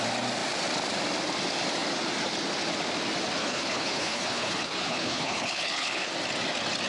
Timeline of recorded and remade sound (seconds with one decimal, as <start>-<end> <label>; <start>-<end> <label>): 0.0-3.4 recorded; 3.4-6.1 remade; 6.1-6.9 recorded